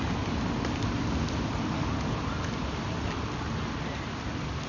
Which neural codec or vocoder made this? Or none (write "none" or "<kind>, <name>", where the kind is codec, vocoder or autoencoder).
none